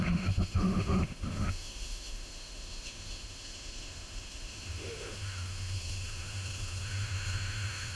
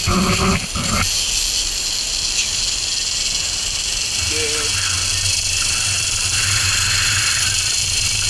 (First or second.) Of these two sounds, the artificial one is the first